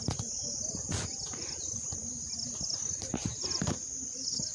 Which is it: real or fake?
real